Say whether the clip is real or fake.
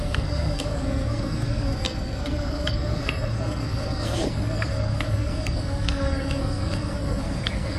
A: fake